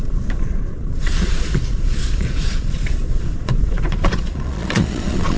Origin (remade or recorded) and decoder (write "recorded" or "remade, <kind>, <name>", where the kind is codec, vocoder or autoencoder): remade, vocoder, Vocos